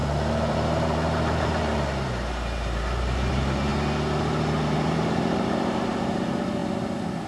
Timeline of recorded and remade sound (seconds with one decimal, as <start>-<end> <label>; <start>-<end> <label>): 0.0-3.7 remade; 3.7-4.2 recorded; 4.2-6.6 remade; 6.6-7.3 recorded